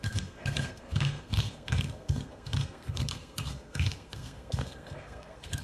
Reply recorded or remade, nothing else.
remade